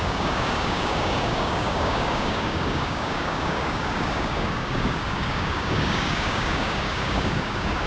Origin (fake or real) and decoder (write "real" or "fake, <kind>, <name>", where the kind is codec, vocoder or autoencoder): fake, codec, DAC